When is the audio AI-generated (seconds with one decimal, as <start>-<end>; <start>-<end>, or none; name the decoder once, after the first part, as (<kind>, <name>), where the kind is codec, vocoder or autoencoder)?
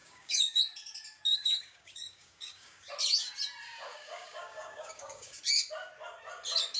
0.0-0.6 (codec, DAC); 1.3-2.9; 3.9-5.4